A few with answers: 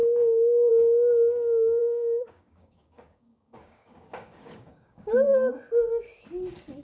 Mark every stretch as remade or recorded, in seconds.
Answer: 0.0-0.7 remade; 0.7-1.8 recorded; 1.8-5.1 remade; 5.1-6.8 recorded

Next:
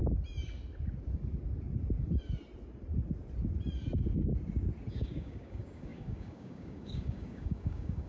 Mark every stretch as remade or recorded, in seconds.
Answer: 0.0-4.9 recorded; 4.9-8.1 remade

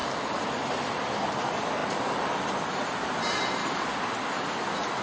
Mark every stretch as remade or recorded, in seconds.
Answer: 0.0-5.0 recorded

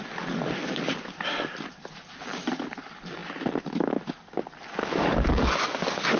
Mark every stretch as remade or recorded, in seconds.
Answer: 0.0-4.8 recorded; 4.8-6.2 remade

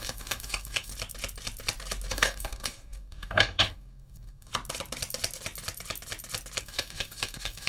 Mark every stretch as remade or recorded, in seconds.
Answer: 0.0-0.9 remade; 0.9-2.1 recorded; 2.1-4.5 remade; 4.5-6.6 recorded; 6.6-7.7 remade